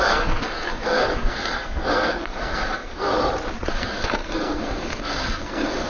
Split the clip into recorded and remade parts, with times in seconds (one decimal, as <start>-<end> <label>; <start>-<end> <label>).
0.0-3.1 remade; 3.1-3.7 recorded; 3.7-5.9 remade